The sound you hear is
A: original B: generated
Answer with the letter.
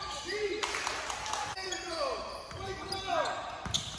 B